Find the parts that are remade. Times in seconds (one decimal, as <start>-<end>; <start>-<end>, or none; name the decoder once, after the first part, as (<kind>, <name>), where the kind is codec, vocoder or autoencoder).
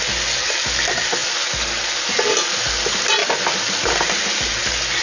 none